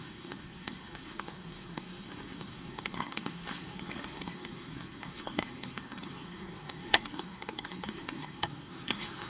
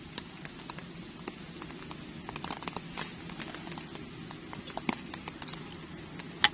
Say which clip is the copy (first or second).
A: first